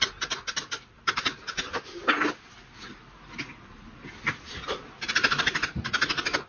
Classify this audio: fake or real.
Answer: real